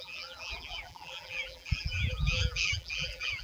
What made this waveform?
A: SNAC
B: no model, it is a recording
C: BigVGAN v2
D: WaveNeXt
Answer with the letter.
C